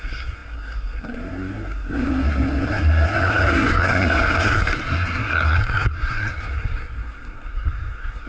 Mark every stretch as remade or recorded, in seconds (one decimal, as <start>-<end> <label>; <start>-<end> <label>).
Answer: 0.0-8.3 remade